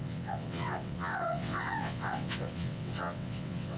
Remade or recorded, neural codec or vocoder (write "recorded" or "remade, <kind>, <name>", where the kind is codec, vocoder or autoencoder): remade, vocoder, WaveNeXt